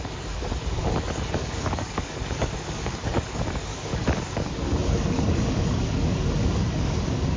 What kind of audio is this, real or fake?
fake